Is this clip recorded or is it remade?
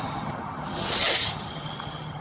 remade